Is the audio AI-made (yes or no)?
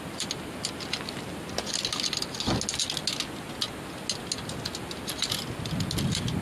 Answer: no